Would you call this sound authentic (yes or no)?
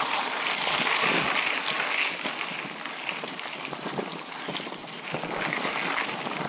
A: yes